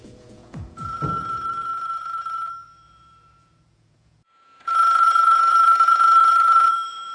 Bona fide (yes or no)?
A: no